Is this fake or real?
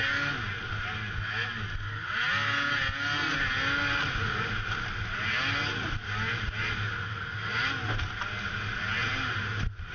real